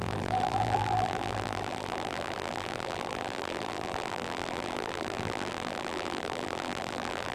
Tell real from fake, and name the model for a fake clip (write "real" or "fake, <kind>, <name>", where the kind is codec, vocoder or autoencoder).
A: fake, vocoder, BigVGAN v2